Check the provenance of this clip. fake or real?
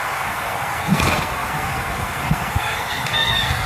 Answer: fake